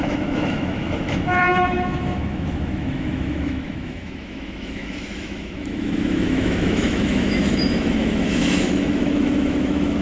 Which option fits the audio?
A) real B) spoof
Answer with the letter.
B